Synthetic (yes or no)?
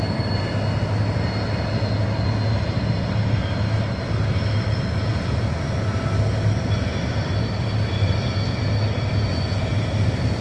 no